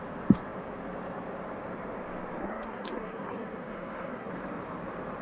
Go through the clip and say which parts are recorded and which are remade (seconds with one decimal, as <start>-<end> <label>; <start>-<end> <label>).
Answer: 0.0-2.4 recorded; 2.4-4.3 remade; 4.3-5.2 recorded

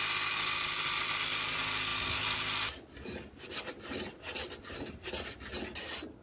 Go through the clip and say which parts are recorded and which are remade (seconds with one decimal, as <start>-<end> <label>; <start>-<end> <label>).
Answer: 0.0-6.2 recorded

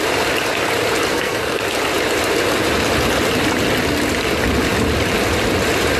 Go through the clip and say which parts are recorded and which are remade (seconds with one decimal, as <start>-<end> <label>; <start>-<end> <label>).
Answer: 0.0-1.1 recorded; 1.1-1.6 remade; 1.6-6.0 recorded

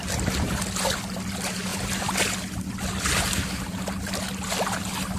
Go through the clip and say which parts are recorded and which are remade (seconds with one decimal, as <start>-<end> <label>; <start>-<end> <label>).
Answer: 0.0-5.2 recorded